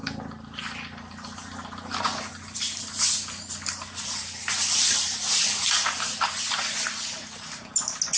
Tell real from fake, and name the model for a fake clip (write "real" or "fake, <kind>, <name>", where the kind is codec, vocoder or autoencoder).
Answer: real